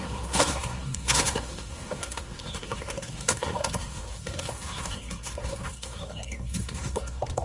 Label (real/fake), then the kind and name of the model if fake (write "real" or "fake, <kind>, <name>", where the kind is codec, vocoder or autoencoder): fake, codec, SNAC